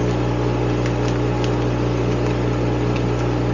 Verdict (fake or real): real